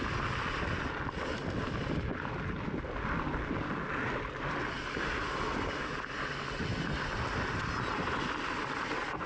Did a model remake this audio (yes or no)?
no